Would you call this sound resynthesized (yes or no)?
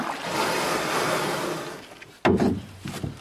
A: no